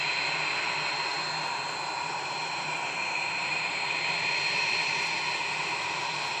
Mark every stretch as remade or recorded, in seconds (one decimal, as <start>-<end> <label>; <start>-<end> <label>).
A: 0.0-6.4 recorded